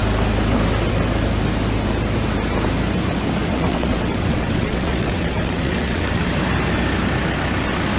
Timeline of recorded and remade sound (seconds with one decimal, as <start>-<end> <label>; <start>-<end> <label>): 0.0-3.4 recorded; 3.4-6.3 remade; 6.3-8.0 recorded